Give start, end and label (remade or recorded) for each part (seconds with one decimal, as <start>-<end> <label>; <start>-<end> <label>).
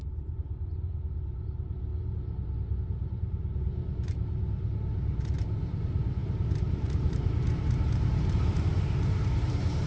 0.0-1.9 remade; 1.9-2.8 recorded; 2.8-8.7 remade; 8.7-9.3 recorded; 9.3-9.9 remade